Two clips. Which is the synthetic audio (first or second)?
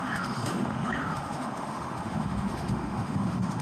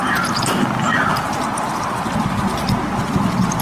first